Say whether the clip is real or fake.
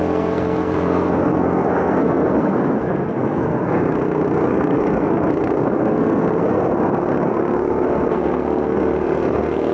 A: fake